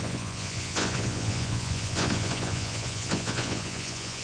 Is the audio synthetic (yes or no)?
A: yes